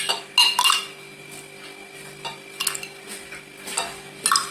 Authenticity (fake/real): real